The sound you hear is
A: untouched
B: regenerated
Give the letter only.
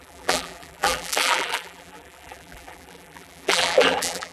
B